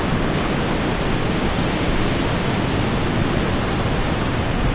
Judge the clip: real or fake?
real